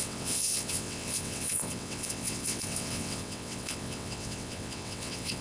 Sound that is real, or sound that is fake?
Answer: fake